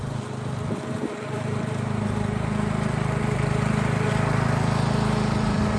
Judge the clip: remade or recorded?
remade